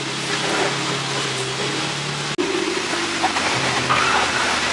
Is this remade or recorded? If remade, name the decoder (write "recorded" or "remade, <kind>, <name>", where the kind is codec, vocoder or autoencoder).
recorded